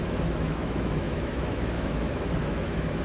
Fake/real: fake